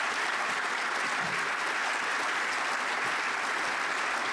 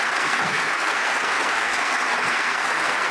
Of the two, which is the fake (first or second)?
second